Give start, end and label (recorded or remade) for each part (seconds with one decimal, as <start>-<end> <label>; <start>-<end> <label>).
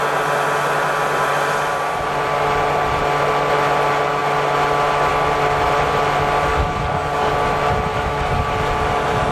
0.0-6.5 recorded; 6.5-7.3 remade; 7.3-7.9 recorded; 7.9-8.4 remade; 8.4-9.3 recorded